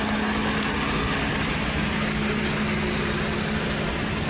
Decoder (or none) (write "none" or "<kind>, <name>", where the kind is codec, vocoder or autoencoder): none